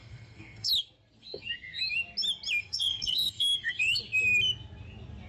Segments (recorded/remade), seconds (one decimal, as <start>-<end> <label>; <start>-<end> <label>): 0.0-0.7 remade; 0.7-1.2 recorded; 1.2-1.8 remade; 1.8-2.6 recorded; 2.6-4.0 remade; 4.0-5.3 recorded